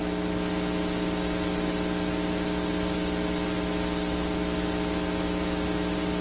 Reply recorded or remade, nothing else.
recorded